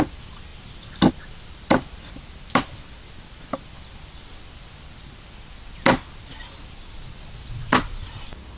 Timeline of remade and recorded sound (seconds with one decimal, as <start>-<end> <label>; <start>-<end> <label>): 0.0-8.6 recorded